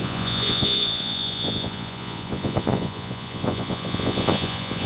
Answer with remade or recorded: remade